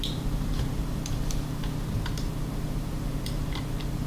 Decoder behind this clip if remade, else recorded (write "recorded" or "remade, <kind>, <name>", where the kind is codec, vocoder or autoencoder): remade, vocoder, BigVGAN v2